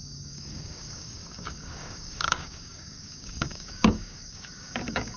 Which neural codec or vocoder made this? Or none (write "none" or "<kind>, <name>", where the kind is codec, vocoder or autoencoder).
codec, DAC